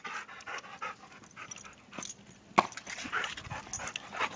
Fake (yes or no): no